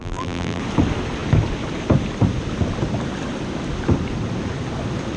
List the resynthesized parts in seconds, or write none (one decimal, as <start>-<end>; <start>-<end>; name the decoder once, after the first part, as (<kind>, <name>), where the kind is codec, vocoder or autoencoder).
0.0-0.6 (vocoder, BigVGAN v2)